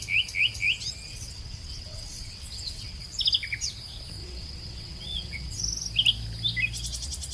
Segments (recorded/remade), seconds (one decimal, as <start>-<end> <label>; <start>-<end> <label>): 0.0-1.1 recorded; 1.1-3.0 remade; 3.0-4.2 recorded; 4.2-5.6 remade; 5.6-7.3 recorded